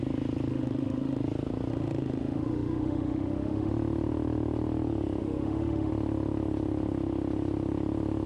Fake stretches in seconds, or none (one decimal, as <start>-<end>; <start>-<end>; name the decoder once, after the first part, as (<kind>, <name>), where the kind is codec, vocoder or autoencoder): 0.5-1.2 (autoencoder, DAC-VAE); 1.7-3.7; 5.2-5.9